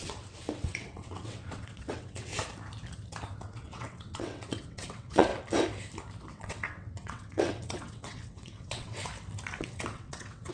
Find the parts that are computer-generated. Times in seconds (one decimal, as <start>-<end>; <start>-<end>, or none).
0.0-2.3; 3.4-5.3; 6.3-9.0; 9.6-10.5